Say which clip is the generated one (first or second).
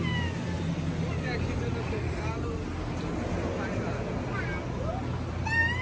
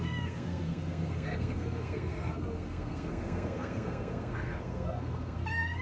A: second